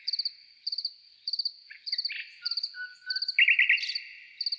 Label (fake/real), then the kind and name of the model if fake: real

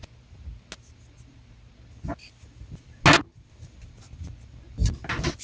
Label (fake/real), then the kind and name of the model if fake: real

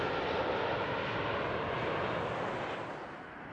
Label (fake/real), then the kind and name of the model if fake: real